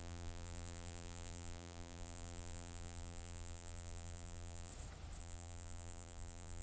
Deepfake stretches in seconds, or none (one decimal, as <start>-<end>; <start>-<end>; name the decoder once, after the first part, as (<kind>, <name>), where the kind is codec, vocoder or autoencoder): 0.0-4.7 (vocoder, BigVGAN v2); 5.2-6.6